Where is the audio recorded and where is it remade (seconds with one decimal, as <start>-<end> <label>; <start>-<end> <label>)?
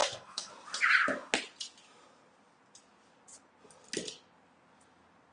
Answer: 0.0-0.5 remade; 0.5-5.3 recorded